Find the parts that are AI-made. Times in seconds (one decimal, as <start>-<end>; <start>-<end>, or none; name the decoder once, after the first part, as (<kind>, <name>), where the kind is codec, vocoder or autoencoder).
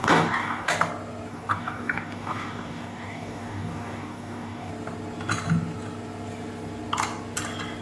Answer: 0.0-0.7 (codec, DAC); 1.3-4.7